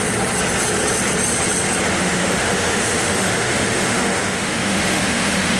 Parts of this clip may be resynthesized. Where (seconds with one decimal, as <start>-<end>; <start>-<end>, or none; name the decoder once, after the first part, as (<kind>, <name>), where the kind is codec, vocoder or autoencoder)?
1.9-5.6 (autoencoder, DAC-VAE)